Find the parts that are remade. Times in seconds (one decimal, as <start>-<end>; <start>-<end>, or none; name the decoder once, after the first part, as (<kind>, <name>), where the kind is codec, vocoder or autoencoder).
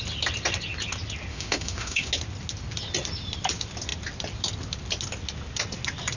1.3-2.1 (autoencoder, DAC-VAE)